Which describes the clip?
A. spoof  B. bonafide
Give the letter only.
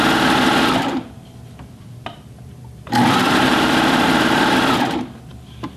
A